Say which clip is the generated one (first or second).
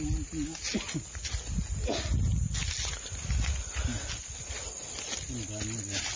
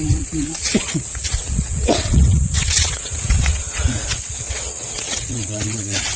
second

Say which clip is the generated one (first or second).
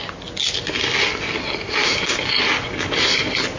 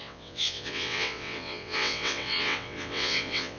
second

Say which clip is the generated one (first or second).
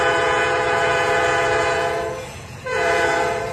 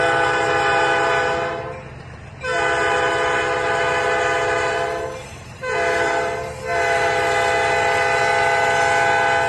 first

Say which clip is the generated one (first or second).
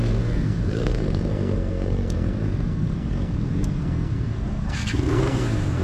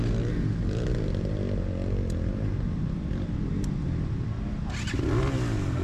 first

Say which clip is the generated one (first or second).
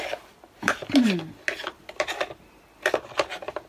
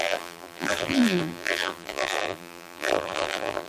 second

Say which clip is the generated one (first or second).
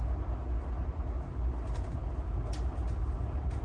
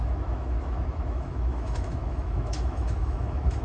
second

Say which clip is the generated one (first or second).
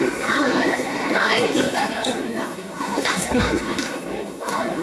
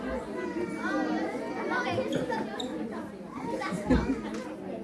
first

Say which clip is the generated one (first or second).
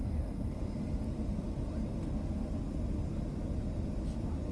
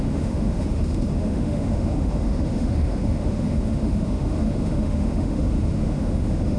second